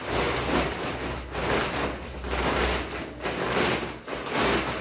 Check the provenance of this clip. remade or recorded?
recorded